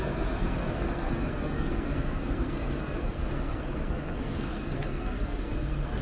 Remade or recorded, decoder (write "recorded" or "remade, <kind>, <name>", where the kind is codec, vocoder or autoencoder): remade, codec, SNAC